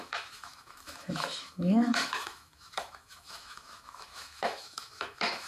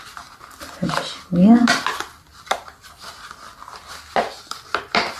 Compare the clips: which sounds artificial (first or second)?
first